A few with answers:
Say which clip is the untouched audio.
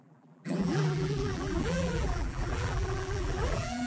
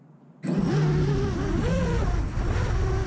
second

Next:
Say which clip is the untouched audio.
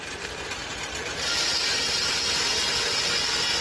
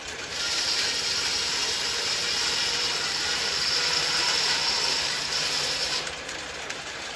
first